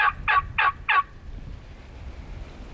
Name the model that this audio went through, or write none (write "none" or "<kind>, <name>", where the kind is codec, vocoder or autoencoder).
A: none